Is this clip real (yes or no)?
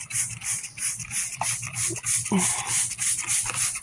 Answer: no